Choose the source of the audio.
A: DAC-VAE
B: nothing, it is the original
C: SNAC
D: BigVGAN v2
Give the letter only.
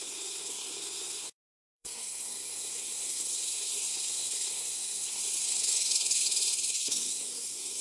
C